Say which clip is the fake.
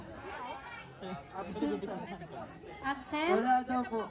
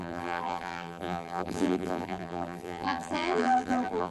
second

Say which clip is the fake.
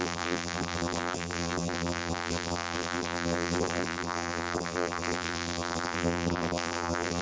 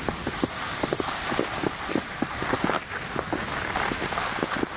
first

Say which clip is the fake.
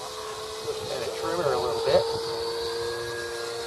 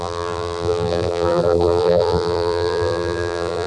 second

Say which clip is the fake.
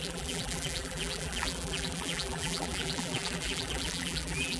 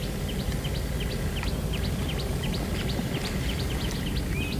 first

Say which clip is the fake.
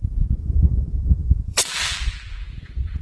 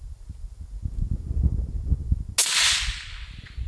first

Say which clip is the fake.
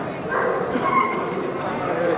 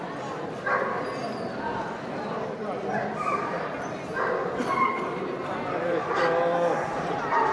first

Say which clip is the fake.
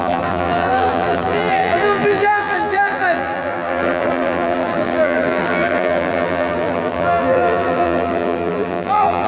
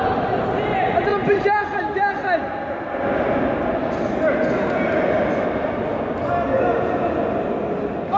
first